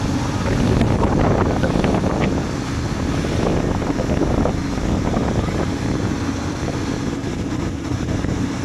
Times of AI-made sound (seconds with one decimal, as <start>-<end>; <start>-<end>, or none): none